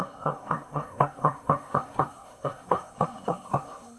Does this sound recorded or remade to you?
remade